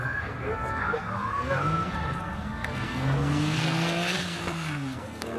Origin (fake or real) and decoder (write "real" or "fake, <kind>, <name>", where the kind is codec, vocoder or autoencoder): fake, codec, SNAC